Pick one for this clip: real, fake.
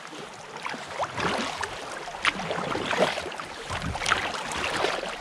real